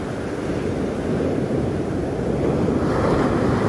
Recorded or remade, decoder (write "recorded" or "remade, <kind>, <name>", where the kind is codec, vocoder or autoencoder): remade, vocoder, BigVGAN v2